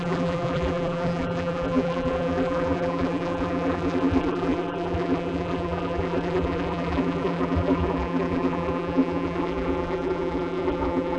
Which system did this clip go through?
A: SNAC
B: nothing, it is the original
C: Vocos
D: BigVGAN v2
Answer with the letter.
D